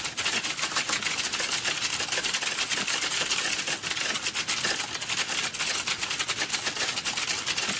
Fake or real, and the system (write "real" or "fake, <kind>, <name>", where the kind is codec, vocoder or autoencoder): real